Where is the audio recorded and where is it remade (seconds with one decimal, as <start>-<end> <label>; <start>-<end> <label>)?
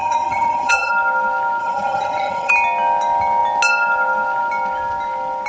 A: 0.0-0.9 remade; 0.9-1.6 recorded; 1.6-2.5 remade; 2.5-5.5 recorded